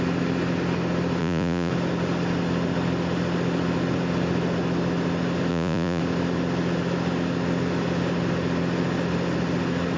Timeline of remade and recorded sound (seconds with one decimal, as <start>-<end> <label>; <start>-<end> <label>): 0.0-1.2 recorded; 1.2-1.7 remade; 1.7-5.5 recorded; 5.5-6.0 remade; 6.0-10.0 recorded